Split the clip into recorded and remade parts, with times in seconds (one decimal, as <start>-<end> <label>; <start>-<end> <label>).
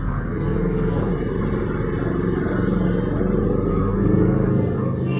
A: 0.0-1.1 remade; 1.1-3.7 recorded; 3.7-5.2 remade